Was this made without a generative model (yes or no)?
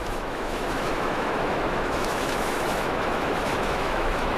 no